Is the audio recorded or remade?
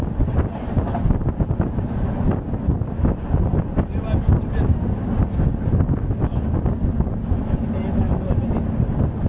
recorded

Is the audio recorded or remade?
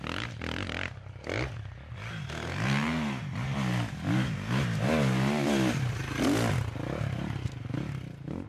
recorded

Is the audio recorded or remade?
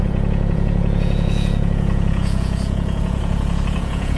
remade